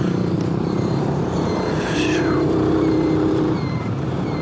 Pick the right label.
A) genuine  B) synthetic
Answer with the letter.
B